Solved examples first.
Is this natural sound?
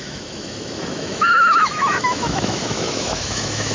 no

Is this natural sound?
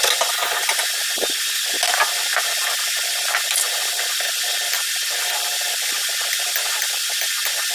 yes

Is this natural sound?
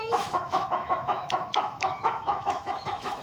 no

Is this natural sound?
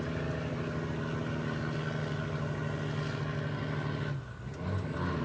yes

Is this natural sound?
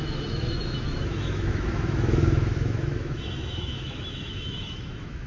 no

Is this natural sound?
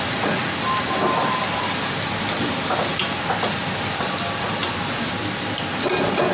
yes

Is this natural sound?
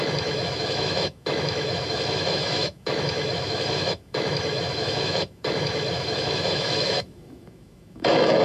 no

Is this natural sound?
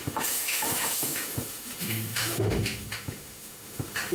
no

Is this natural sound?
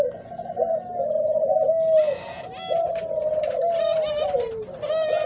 yes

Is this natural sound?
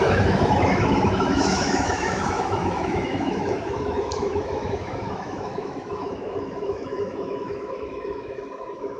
no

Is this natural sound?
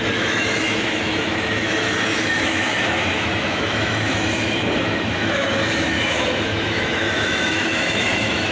no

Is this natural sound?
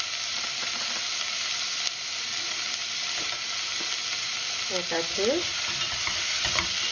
yes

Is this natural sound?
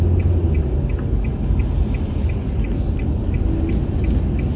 yes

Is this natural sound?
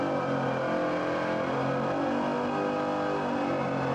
yes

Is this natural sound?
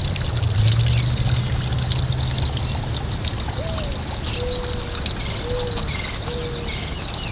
yes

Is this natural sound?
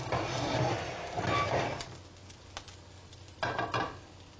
yes